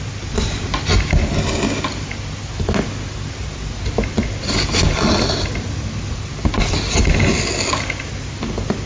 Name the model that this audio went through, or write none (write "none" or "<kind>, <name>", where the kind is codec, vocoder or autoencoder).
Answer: none